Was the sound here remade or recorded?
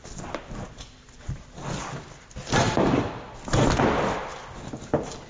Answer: recorded